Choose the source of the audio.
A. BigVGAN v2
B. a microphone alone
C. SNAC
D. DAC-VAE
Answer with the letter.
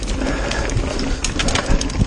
B